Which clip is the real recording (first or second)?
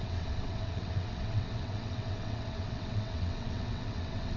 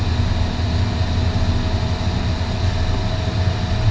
second